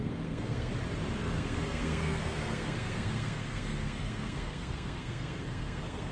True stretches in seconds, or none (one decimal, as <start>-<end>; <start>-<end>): 0.7-1.2